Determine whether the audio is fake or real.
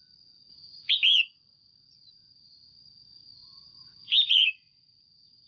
fake